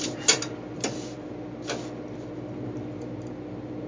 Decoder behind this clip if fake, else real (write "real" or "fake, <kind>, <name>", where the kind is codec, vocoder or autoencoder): real